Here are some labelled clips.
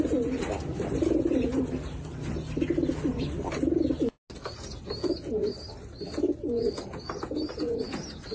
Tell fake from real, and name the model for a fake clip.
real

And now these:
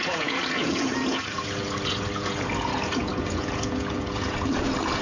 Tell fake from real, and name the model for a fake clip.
fake, vocoder, Vocos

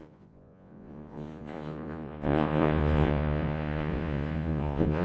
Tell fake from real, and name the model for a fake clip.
fake, vocoder, Vocos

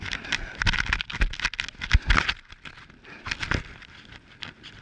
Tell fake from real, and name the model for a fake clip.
real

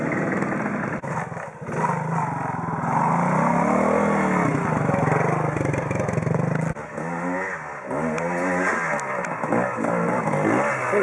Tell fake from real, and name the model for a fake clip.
real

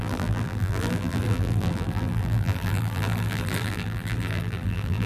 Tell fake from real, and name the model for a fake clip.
fake, vocoder, BigVGAN v2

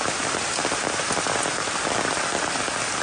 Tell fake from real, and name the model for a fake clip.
real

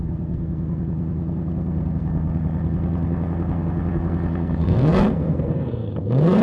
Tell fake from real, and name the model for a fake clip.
fake, codec, SNAC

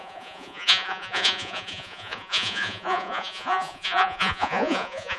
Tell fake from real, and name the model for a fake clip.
fake, vocoder, Vocos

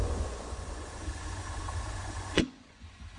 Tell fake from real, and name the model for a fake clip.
fake, vocoder, Vocos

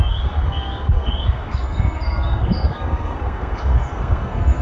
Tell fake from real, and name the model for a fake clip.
fake, codec, SNAC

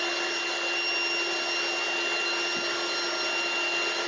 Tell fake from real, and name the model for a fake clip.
real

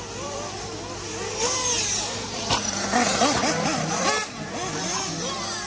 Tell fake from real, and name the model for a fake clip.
real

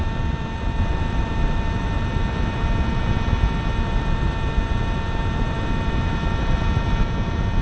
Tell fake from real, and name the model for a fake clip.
fake, vocoder, BigVGAN v2